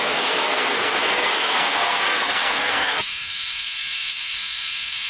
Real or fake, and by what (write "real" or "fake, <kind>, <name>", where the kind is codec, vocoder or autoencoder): fake, codec, SNAC